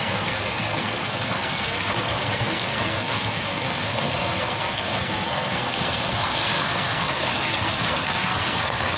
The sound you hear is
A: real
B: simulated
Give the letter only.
B